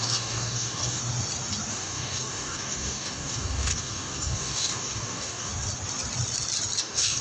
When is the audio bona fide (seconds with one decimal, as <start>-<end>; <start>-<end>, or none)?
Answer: 1.0-1.7; 5.5-6.8